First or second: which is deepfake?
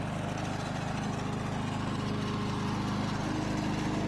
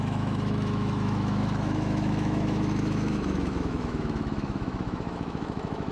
second